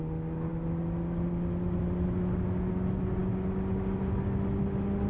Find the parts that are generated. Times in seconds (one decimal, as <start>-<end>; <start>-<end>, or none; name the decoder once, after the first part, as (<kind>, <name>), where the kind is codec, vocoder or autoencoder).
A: none